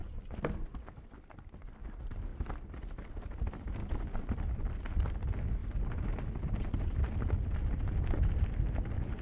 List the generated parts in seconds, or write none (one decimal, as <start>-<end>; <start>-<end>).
0.6-3.8; 4.3-5.6; 8.4-9.2